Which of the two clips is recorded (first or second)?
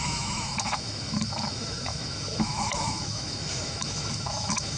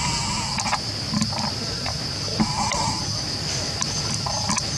second